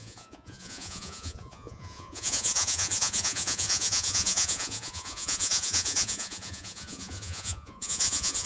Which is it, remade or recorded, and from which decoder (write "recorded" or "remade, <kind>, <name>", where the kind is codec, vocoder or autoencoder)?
remade, vocoder, Vocos